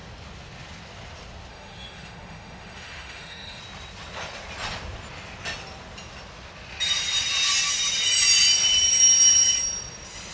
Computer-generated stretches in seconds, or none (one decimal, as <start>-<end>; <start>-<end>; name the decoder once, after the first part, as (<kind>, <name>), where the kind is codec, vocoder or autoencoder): 1.5-3.6 (autoencoder, DAC-VAE)